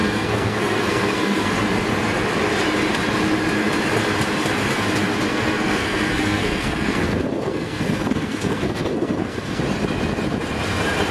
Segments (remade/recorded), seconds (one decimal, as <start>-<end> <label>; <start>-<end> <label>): 0.0-1.5 remade; 1.5-5.3 recorded; 5.3-9.6 remade; 9.6-11.1 recorded